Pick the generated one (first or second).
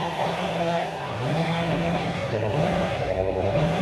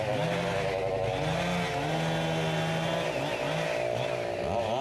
first